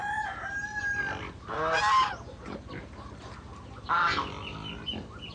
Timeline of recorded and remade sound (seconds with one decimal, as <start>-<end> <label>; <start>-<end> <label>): 0.0-5.3 recorded